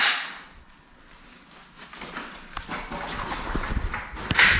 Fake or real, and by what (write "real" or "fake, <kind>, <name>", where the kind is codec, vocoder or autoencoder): real